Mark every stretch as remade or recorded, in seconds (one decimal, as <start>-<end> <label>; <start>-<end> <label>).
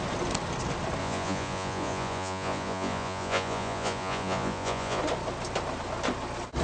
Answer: 0.0-1.0 recorded; 1.0-5.0 remade; 5.0-6.6 recorded